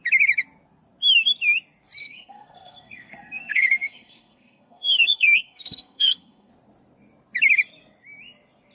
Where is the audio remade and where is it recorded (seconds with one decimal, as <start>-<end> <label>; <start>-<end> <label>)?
0.0-2.0 recorded; 2.0-6.5 remade; 6.5-8.7 recorded

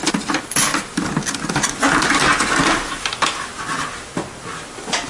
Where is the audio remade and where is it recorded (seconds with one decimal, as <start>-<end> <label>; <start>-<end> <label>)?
0.0-5.1 recorded